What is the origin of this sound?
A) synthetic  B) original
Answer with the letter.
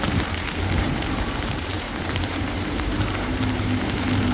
A